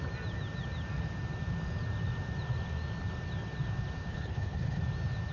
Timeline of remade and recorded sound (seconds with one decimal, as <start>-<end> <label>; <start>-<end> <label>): 0.0-4.1 recorded; 4.1-4.8 remade; 4.8-5.3 recorded

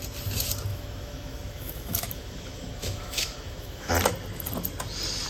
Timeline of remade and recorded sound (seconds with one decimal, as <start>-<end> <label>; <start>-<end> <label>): 0.0-0.7 recorded; 0.7-3.9 remade; 3.9-5.3 recorded

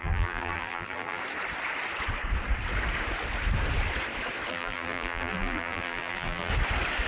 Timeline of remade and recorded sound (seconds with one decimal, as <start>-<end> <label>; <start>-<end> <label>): 0.0-1.2 remade; 1.2-4.5 recorded; 4.5-6.5 remade; 6.5-7.1 recorded

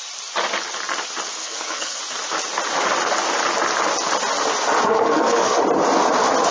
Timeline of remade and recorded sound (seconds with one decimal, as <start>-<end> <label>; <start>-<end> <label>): 0.0-1.4 recorded; 1.4-2.0 remade; 2.0-4.9 recorded; 4.9-5.6 remade; 5.6-6.5 recorded

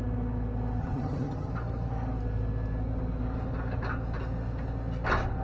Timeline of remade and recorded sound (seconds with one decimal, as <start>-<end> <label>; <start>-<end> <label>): 0.0-0.8 recorded; 0.8-1.5 remade; 1.5-5.4 recorded

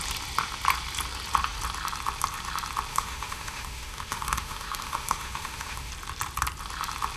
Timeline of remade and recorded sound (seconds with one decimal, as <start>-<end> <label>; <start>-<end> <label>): 0.0-2.9 recorded; 2.9-5.9 remade; 5.9-7.2 recorded

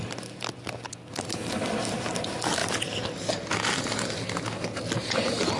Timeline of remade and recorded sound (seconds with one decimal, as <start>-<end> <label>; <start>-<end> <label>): 0.0-5.6 recorded